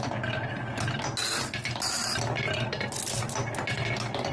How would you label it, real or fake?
real